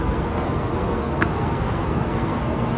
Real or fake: fake